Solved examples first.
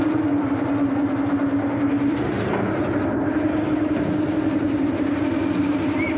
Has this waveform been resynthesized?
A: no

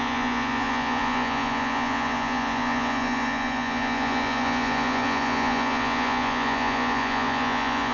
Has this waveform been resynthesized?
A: yes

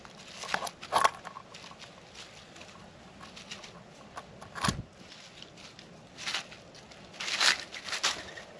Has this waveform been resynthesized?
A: no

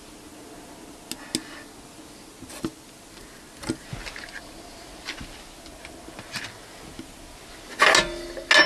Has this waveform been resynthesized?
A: no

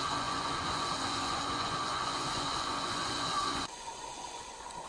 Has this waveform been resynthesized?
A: yes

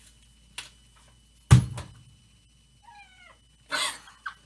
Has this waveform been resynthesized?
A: no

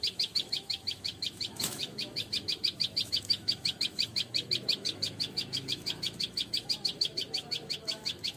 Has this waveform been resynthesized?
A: yes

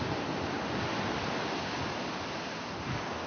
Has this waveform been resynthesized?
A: no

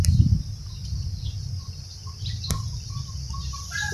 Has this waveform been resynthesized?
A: no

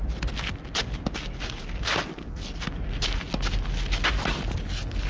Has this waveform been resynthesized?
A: no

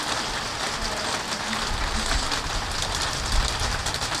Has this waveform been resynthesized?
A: no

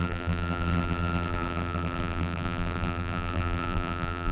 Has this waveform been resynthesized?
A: yes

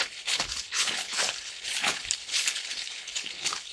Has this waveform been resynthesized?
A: yes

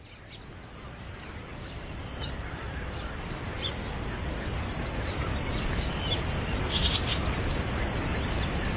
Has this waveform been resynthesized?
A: no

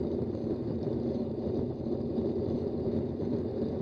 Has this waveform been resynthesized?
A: yes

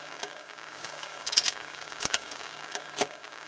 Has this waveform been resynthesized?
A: yes